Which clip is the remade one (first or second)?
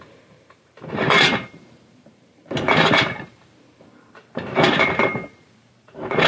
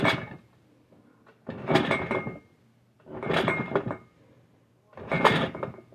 first